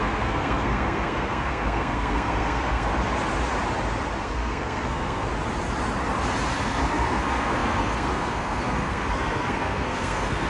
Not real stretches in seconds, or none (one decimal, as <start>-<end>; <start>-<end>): 0.0-2.9; 4.2-5.3; 6.6-10.5